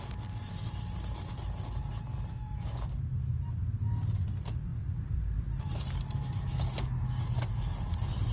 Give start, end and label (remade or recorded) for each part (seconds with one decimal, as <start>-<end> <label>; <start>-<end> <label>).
0.0-4.7 recorded; 4.7-6.2 remade; 6.2-8.3 recorded